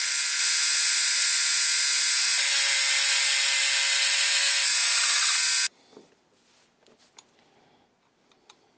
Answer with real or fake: real